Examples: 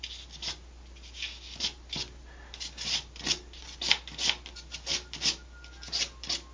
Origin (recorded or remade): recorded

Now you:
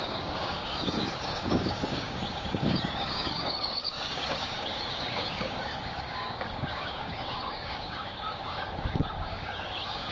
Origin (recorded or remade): remade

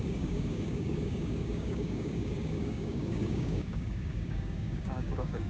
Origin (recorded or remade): remade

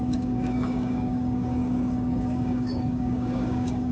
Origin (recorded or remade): remade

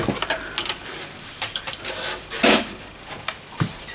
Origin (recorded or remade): recorded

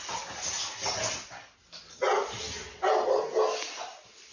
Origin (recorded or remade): recorded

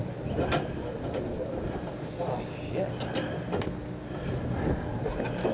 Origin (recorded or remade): recorded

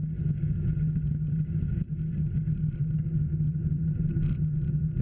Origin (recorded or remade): recorded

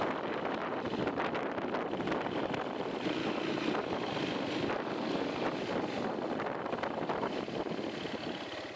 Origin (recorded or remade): recorded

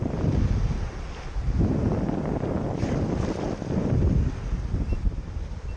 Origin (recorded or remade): recorded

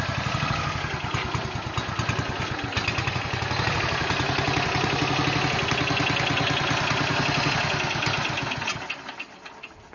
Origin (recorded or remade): recorded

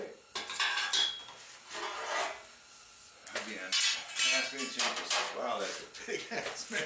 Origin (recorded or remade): recorded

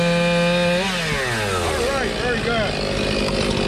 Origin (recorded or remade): recorded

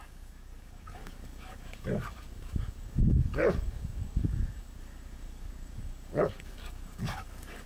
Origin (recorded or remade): remade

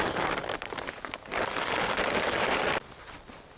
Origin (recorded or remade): recorded